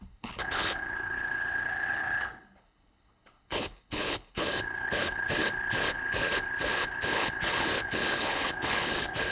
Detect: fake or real fake